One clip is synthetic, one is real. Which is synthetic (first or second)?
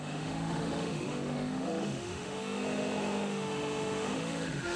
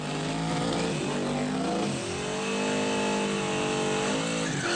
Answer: first